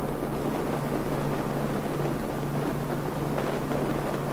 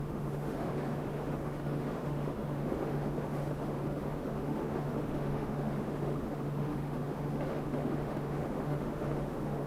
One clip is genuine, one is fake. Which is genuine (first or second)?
first